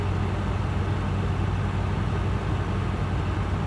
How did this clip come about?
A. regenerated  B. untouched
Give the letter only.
B